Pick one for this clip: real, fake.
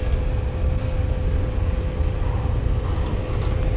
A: real